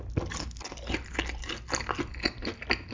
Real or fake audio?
real